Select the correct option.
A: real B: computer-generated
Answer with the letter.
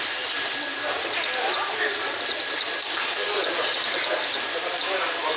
A